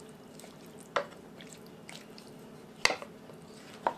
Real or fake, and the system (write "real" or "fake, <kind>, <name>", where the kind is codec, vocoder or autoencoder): real